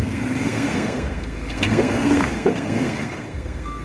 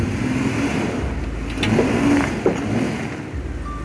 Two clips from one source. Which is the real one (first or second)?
second